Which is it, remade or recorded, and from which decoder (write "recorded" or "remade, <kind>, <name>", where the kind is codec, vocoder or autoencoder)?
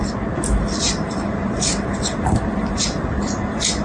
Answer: recorded